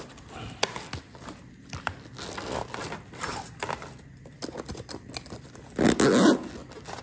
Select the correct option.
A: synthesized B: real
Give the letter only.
B